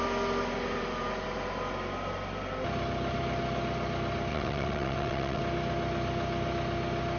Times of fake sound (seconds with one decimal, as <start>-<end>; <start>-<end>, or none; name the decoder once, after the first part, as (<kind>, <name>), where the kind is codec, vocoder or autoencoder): 4.3-5.4 (vocoder, WaveNeXt)